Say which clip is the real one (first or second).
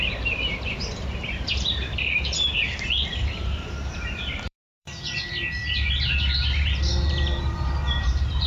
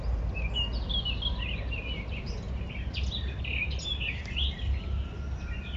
second